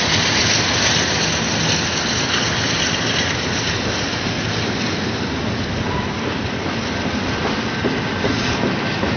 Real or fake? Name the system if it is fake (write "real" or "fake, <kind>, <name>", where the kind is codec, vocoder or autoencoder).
real